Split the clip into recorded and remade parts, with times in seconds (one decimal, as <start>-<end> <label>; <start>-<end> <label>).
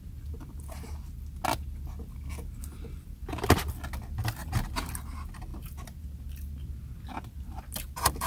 0.0-4.4 recorded; 4.4-4.9 remade; 4.9-8.3 recorded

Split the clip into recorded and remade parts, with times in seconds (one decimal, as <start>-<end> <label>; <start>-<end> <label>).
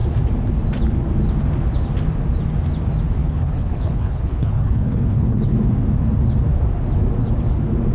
0.0-3.2 recorded; 3.2-5.4 remade; 5.4-7.9 recorded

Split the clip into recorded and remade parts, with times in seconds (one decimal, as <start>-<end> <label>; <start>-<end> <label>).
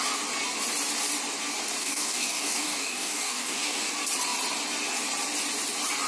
0.0-1.8 recorded; 1.8-3.9 remade; 3.9-6.1 recorded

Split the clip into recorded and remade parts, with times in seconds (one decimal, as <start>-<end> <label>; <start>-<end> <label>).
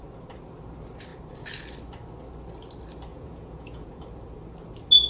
0.0-3.1 recorded; 3.1-4.0 remade; 4.0-5.1 recorded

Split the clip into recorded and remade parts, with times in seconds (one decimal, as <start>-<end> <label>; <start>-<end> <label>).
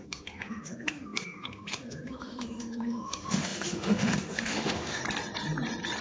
0.0-5.0 remade; 5.0-6.0 recorded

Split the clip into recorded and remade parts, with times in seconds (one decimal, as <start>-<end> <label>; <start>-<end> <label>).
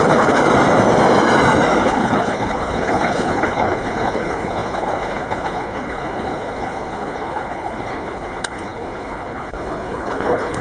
0.0-0.4 remade; 0.4-1.8 recorded; 1.8-10.6 remade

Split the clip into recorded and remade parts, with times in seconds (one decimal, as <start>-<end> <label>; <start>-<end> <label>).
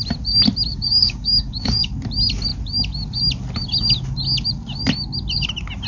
0.0-0.7 recorded; 0.7-1.9 remade; 1.9-5.9 recorded